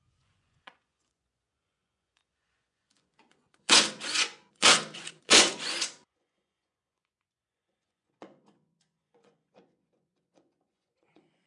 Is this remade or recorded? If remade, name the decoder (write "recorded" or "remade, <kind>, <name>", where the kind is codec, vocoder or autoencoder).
remade, vocoder, Vocos